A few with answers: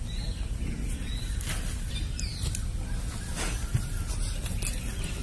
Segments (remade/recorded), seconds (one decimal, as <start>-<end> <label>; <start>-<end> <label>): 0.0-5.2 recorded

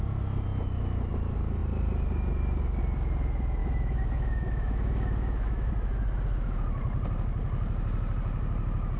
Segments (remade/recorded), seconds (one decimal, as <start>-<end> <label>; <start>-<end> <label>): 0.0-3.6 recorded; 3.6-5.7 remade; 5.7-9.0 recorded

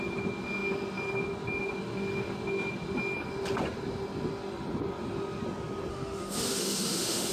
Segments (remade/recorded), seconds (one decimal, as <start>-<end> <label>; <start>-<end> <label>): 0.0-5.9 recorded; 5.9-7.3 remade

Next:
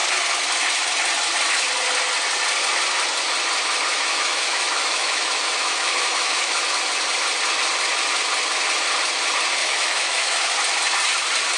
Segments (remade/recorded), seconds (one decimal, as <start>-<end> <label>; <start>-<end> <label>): 0.0-3.9 recorded; 3.9-6.6 remade; 6.6-9.6 recorded; 9.6-10.5 remade; 10.5-11.6 recorded

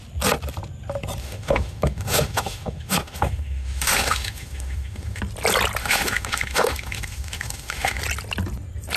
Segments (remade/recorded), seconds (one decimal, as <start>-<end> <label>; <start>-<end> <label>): 0.0-1.2 recorded; 1.2-5.2 remade; 5.2-5.8 recorded; 5.8-8.0 remade; 8.0-9.0 recorded

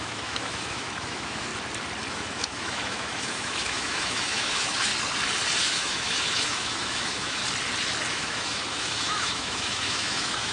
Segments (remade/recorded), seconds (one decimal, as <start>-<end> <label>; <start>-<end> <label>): 0.0-1.5 remade; 1.5-2.1 recorded; 2.1-4.9 remade; 4.9-5.6 recorded; 5.6-7.4 remade; 7.4-8.1 recorded; 8.1-10.5 remade

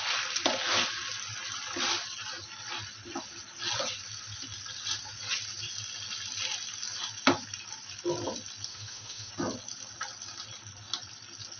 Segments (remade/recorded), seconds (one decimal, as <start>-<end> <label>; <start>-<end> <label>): 0.0-8.7 recorded; 8.7-9.3 remade; 9.3-11.6 recorded